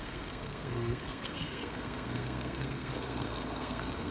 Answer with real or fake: fake